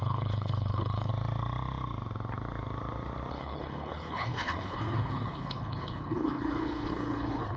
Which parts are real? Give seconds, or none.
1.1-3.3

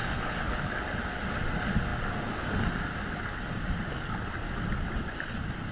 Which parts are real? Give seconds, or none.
0.6-5.7